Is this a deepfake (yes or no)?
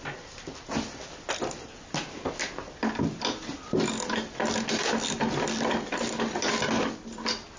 no